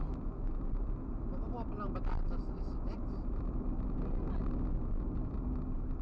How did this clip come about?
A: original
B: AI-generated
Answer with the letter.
A